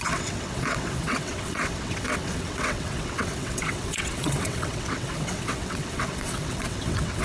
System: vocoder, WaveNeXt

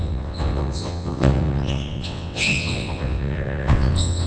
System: vocoder, WaveNeXt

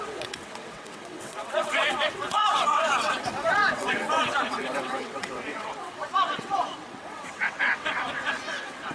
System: vocoder, WaveNeXt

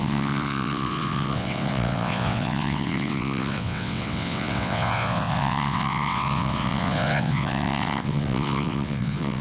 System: vocoder, WaveNeXt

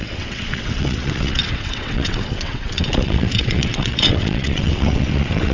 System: vocoder, WaveNeXt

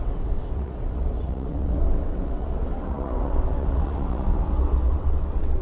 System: vocoder, WaveNeXt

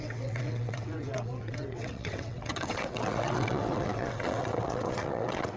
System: vocoder, WaveNeXt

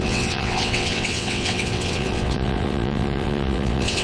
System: vocoder, WaveNeXt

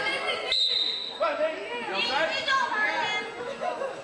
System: none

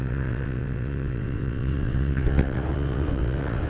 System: vocoder, WaveNeXt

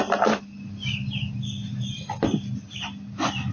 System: none